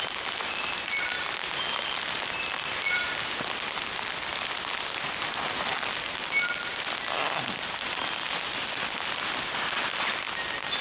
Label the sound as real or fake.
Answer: real